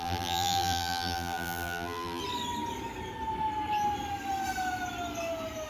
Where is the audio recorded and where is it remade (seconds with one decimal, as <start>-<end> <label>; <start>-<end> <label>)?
0.0-2.2 remade; 2.2-5.7 recorded